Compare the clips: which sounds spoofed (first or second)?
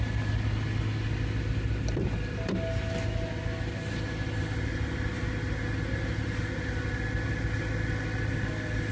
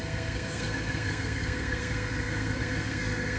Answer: second